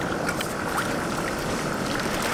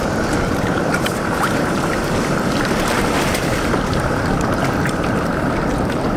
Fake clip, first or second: second